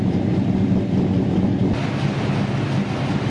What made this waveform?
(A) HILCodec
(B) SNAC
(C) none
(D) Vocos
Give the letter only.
C